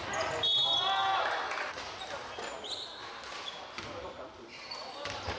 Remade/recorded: recorded